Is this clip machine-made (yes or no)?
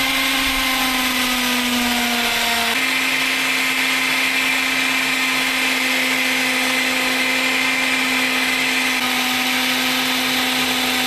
no